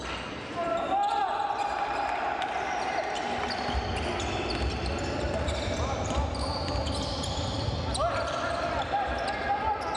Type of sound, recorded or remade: recorded